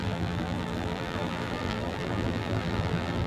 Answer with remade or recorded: remade